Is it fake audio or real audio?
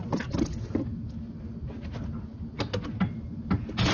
real